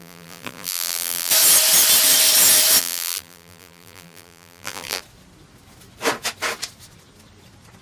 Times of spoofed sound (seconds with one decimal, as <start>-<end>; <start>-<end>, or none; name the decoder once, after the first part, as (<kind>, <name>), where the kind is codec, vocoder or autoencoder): 0.0-1.3 (vocoder, BigVGAN v2); 2.8-5.0